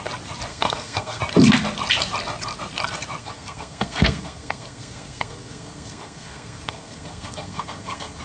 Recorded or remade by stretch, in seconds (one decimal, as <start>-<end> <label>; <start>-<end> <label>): 0.0-0.5 recorded; 0.5-1.2 remade; 1.2-3.2 recorded; 3.2-8.2 remade